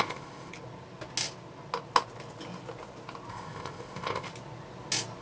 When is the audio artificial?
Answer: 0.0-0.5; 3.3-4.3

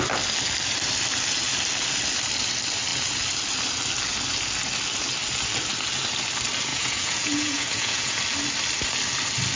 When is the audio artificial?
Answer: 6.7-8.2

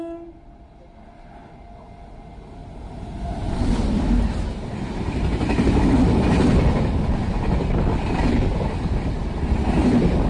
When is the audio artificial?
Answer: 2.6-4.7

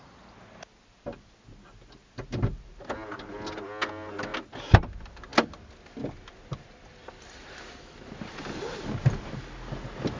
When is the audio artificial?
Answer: none

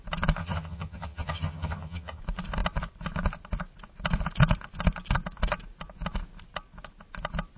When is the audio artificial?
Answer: 0.4-2.2

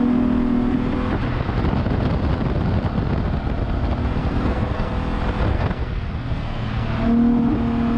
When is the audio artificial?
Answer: 4.2-4.9; 5.5-6.9

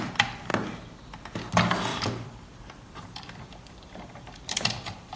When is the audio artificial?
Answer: 1.9-5.2

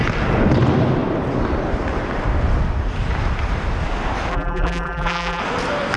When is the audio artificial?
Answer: 4.3-5.4